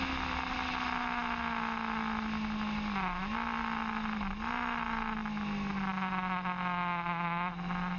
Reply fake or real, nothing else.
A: real